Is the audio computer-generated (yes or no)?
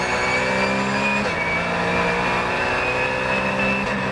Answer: no